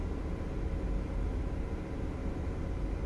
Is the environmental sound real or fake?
real